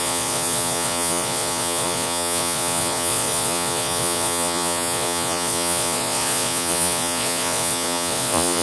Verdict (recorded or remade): remade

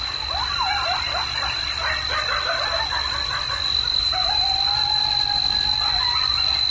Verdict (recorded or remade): recorded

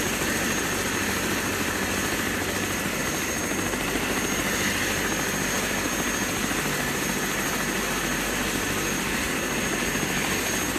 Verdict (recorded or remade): recorded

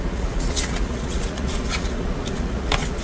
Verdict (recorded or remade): remade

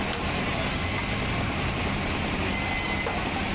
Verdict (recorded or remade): recorded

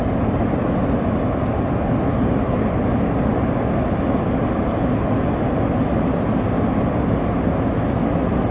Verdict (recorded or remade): recorded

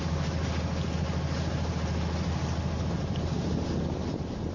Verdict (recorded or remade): recorded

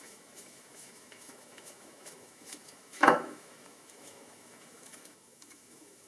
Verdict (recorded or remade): remade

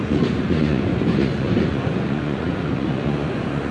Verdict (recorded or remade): remade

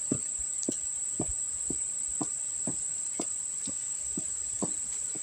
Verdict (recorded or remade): recorded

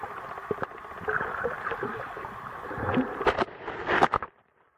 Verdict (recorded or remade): recorded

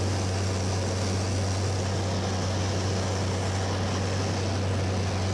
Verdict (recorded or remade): recorded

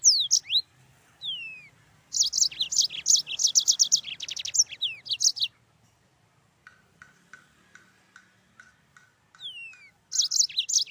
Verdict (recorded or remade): recorded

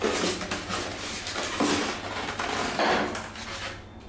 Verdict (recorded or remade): recorded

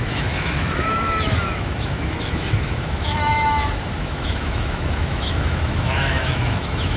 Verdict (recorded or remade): remade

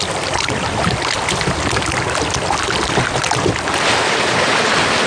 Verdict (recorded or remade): recorded